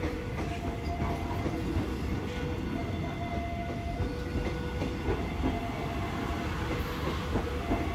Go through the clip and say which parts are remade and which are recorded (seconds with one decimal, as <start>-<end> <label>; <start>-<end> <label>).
0.0-7.9 recorded